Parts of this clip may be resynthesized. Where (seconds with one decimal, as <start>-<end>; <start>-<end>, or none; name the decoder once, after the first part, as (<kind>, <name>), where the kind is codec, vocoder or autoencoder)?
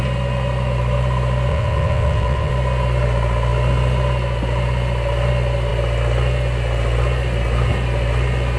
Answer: 1.5-2.5 (vocoder, WaveNeXt)